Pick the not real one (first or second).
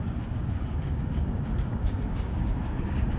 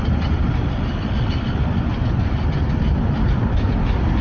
first